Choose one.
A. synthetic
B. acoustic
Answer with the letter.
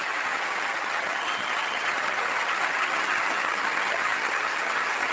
A